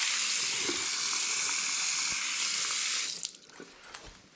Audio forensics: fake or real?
real